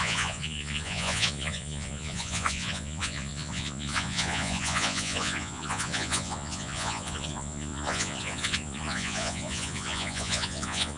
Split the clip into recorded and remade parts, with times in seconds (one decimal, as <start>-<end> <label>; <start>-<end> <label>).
0.0-11.0 remade